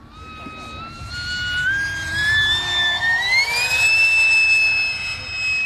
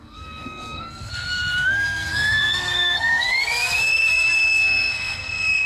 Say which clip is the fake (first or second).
second